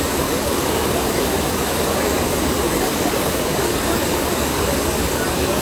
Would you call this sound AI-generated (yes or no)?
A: yes